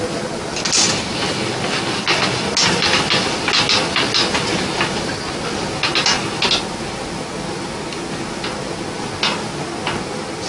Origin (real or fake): real